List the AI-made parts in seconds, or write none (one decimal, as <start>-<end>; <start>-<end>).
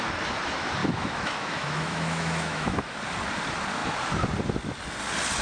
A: 0.8-3.0